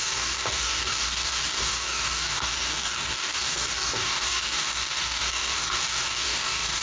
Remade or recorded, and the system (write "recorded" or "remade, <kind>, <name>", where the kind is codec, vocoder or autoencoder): remade, codec, DAC